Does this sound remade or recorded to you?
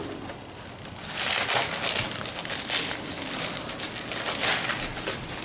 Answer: recorded